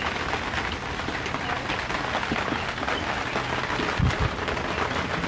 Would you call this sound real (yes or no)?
yes